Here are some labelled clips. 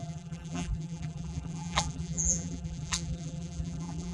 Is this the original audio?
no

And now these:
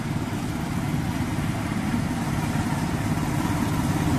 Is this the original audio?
yes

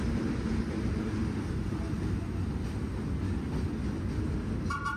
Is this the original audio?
yes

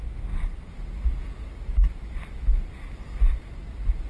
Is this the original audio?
yes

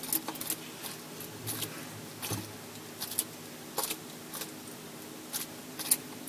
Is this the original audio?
yes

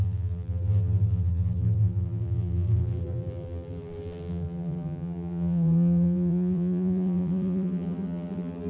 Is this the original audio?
no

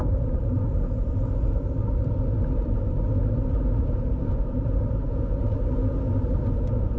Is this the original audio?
no